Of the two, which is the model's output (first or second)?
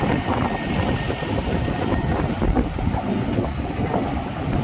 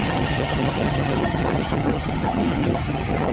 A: second